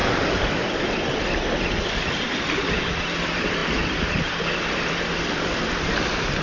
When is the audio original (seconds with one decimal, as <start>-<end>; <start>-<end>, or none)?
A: 0.0-6.4